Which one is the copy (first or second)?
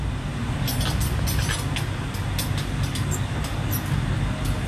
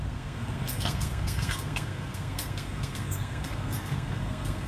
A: second